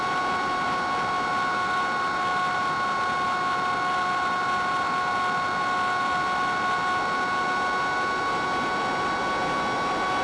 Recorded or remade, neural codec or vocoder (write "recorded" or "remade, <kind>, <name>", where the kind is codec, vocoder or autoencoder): recorded